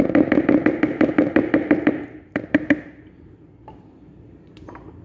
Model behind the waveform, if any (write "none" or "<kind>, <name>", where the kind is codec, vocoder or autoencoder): vocoder, BigVGAN v2